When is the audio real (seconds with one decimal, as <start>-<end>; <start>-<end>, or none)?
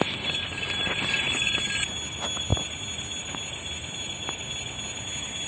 0.0-5.5